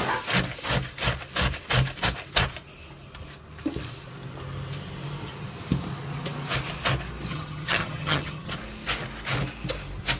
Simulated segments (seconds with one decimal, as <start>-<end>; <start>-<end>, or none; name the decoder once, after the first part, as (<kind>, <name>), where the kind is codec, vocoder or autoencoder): 7.3-8.5 (vocoder, HiFi-GAN)